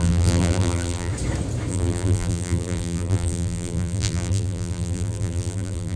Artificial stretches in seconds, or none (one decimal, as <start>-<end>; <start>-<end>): 0.0-1.1; 1.7-6.0